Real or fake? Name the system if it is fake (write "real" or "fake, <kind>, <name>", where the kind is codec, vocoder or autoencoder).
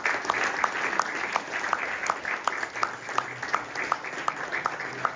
real